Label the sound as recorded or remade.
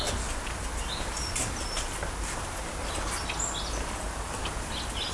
recorded